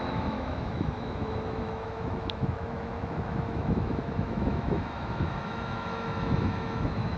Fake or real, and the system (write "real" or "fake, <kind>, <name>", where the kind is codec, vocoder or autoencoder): fake, autoencoder, DAC-VAE